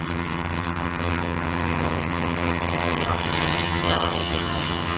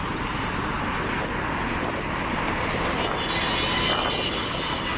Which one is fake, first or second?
first